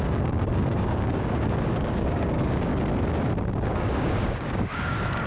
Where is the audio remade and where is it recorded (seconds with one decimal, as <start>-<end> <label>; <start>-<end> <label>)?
0.0-2.7 remade; 2.7-3.7 recorded; 3.7-5.3 remade